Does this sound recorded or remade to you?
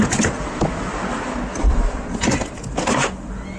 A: recorded